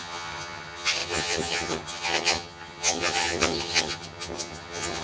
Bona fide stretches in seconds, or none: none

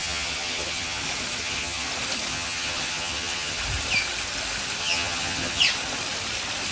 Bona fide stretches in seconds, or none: 1.0-1.4; 1.9-2.3; 3.6-4.8; 5.6-6.7

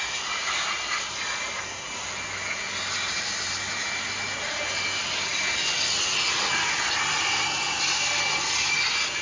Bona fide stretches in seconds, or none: 0.0-9.2

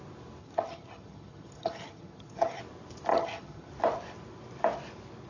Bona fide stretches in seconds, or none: 0.0-0.4; 2.6-3.1; 3.7-5.3

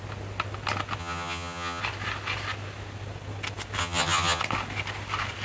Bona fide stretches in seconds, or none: 0.0-1.0; 1.8-3.8; 4.4-5.4

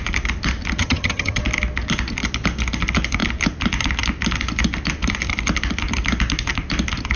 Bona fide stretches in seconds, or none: 0.0-0.8; 1.4-7.2